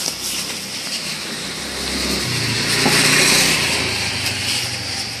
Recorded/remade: recorded